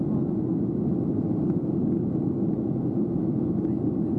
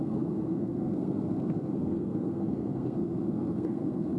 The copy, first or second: second